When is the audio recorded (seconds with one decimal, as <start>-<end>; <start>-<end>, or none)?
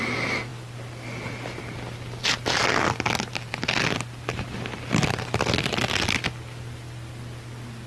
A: 0.0-7.9